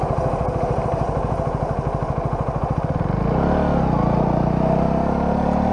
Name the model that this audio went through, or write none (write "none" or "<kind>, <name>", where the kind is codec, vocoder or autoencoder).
none